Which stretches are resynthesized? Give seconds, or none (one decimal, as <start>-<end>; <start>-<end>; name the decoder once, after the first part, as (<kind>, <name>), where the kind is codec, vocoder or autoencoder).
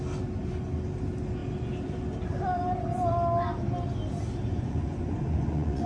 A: 4.5-5.9 (vocoder, Vocos)